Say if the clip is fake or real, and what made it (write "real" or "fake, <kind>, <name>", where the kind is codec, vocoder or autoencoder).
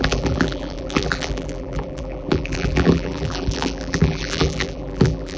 fake, vocoder, BigVGAN v2